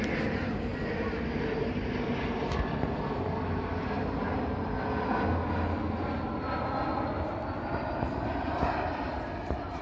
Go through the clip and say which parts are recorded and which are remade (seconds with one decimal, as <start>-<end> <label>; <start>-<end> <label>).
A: 0.0-9.8 recorded